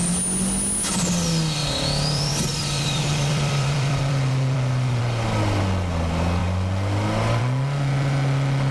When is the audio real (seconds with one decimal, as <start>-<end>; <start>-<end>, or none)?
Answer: 0.0-1.6; 5.0-8.7